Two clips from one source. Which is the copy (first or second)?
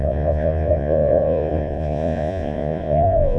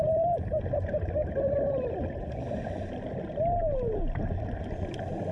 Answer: first